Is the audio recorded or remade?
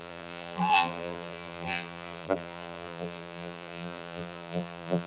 remade